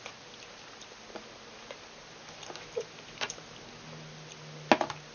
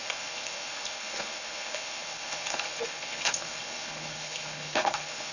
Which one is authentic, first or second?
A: first